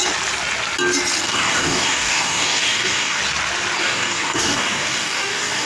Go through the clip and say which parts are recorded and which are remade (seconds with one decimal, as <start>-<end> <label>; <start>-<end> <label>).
0.0-1.2 recorded; 1.2-3.2 remade; 3.2-3.8 recorded; 3.8-5.7 remade